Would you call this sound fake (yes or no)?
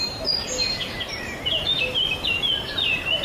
no